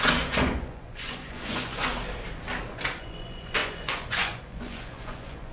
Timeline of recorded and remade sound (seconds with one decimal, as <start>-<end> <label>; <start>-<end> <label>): 0.0-1.9 remade; 1.9-2.7 recorded; 2.7-5.5 remade